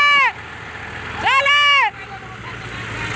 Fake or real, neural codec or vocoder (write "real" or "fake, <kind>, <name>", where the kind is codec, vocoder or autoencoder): real